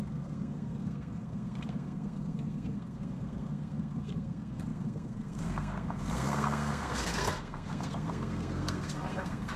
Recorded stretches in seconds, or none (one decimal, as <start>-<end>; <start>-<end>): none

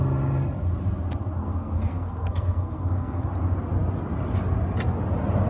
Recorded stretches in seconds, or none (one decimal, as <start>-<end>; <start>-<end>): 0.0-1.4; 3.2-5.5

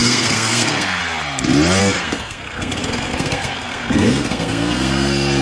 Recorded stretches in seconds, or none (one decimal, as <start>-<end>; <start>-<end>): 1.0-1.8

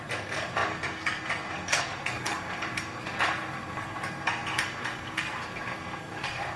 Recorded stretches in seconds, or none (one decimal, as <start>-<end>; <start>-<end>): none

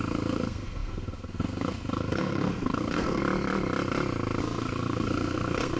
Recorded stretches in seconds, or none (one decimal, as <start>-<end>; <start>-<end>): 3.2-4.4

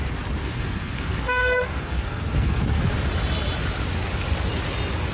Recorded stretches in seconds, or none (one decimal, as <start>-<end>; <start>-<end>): 0.0-0.4; 2.8-5.1